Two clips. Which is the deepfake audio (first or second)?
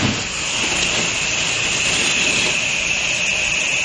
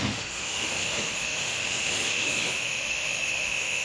second